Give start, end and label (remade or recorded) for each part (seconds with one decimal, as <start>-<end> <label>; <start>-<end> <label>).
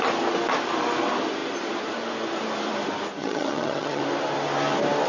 0.0-3.2 recorded; 3.2-4.0 remade; 4.0-5.1 recorded